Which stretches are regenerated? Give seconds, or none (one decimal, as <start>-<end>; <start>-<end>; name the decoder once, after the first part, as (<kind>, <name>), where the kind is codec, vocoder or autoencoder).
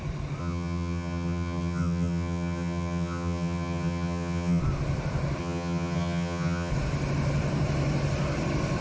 0.4-4.6 (vocoder, HiFi-GAN); 5.4-6.7